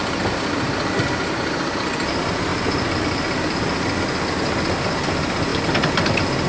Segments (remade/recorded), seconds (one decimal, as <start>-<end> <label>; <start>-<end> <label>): 0.0-6.5 recorded